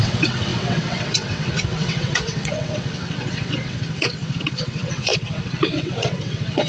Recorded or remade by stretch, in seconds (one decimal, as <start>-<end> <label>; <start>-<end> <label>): 0.0-6.7 remade